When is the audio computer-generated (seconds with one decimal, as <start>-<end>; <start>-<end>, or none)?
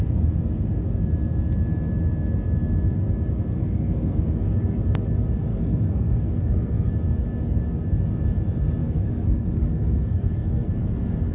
3.6-4.2; 5.5-6.9; 8.8-10.7